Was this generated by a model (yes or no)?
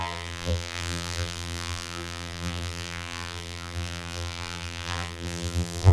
yes